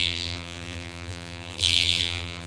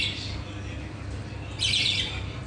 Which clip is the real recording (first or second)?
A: second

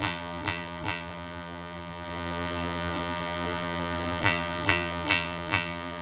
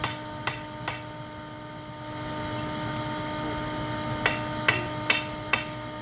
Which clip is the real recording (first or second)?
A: second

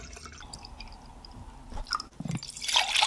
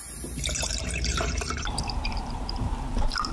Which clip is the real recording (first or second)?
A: first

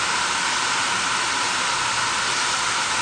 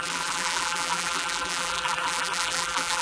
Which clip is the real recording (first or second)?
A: first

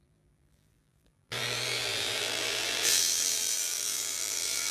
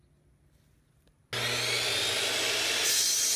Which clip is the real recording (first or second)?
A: second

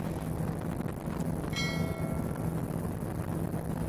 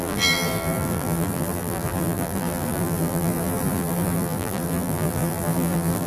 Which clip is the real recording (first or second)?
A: first